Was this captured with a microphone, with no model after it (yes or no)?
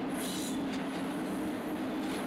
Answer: yes